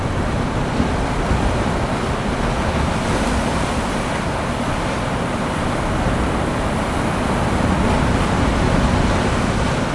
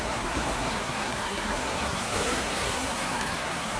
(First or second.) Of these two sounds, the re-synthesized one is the second